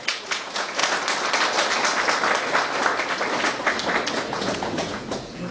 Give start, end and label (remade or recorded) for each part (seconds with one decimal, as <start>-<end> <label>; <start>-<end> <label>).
0.0-0.8 remade; 0.8-4.1 recorded; 4.1-5.5 remade